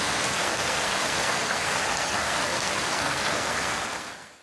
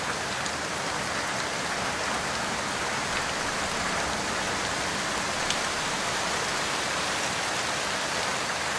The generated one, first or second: first